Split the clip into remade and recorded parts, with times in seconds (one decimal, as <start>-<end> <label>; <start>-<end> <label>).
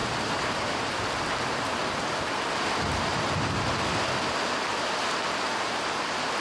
0.0-6.4 recorded